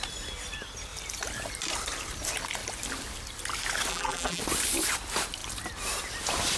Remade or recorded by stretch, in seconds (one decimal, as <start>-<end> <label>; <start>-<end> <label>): 0.0-3.9 recorded; 3.9-4.4 remade; 4.4-6.6 recorded